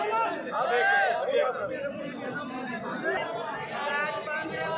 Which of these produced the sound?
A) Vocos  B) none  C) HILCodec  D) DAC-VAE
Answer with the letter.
B